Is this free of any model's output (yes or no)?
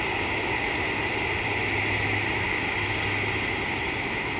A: yes